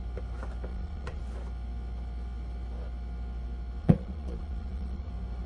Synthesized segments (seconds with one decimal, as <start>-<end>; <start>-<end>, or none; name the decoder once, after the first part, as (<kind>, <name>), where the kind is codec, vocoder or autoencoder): 0.7-1.2 (vocoder, Vocos); 3.8-5.1